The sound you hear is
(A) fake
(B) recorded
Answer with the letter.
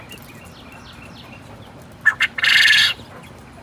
B